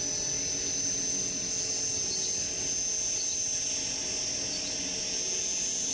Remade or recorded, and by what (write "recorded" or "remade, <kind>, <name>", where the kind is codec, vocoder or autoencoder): recorded